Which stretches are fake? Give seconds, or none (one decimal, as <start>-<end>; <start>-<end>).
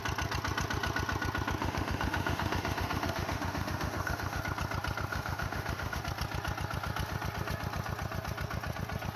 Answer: 1.6-4.4; 5.1-6.0